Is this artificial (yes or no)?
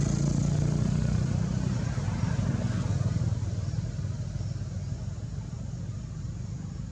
no